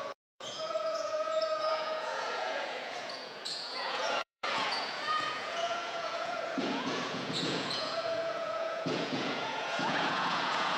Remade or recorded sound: remade